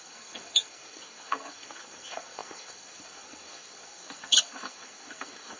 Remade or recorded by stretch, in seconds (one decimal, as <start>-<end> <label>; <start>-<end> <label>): 0.0-5.6 remade